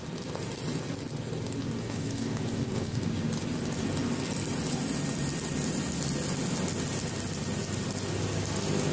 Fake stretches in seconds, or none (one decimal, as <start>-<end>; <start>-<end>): 1.8-3.0